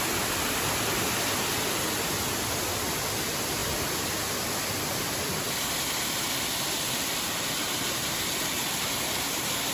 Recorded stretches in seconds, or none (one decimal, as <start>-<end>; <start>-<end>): 0.0-9.7